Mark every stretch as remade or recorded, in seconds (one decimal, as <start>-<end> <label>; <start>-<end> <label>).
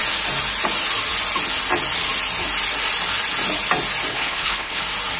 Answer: 0.0-4.1 recorded; 4.1-4.8 remade; 4.8-5.2 recorded